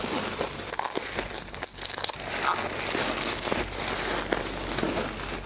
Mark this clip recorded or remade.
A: recorded